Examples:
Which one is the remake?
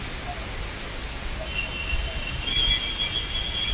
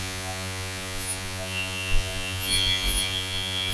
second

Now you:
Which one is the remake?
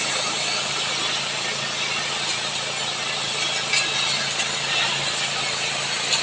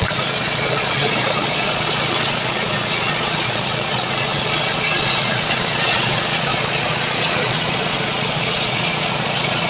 second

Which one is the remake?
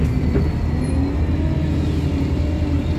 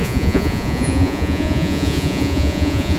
second